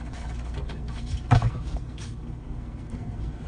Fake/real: fake